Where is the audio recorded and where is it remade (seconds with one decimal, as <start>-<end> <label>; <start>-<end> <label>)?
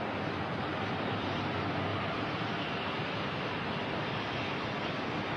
0.0-0.7 recorded; 0.7-1.5 remade; 1.5-1.9 recorded; 1.9-4.3 remade; 4.3-5.4 recorded